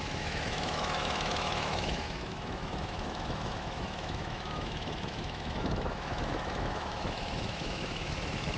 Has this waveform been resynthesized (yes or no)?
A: yes